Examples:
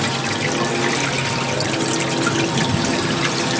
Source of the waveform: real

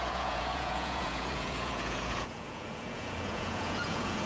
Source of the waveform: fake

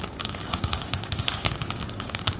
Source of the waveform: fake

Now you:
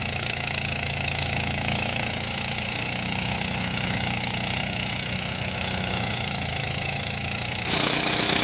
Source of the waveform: fake